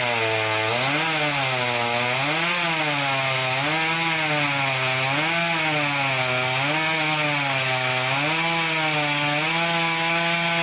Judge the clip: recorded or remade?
recorded